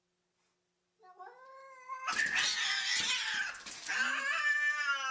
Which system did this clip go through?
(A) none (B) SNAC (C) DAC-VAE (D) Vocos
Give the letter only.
A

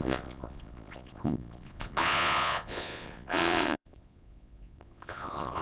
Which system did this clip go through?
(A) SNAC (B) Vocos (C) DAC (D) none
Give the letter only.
B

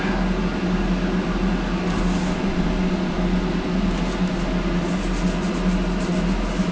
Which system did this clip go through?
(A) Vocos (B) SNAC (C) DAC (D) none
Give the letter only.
D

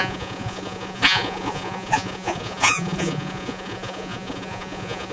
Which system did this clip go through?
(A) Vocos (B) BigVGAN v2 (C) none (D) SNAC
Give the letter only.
A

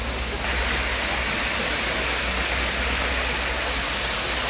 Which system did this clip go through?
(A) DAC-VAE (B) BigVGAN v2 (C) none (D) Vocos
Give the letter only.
C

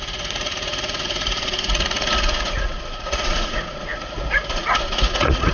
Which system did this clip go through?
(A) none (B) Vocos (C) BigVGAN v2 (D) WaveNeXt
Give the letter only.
B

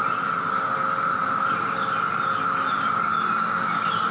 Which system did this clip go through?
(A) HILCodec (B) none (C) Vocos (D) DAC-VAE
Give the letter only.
B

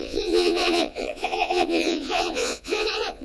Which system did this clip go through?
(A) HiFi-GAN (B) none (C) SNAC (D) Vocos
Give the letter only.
D